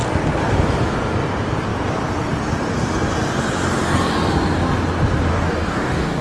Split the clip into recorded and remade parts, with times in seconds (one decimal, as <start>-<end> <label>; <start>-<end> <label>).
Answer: 0.0-5.3 recorded; 5.3-6.2 remade